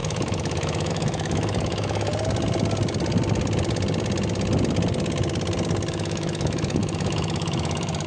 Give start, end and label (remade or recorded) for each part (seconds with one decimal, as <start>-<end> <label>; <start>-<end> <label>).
0.0-2.1 remade; 2.1-5.9 recorded; 5.9-8.1 remade